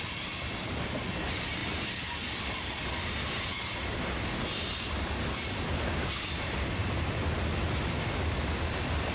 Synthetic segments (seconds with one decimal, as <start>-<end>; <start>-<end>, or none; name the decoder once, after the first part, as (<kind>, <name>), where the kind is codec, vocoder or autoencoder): none